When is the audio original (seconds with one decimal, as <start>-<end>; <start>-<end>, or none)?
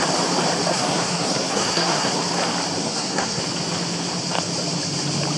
0.0-0.7; 2.2-2.8; 3.4-5.4